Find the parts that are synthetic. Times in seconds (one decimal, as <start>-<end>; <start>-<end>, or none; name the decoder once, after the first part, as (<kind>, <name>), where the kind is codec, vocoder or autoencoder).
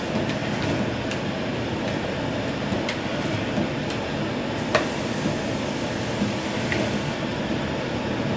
none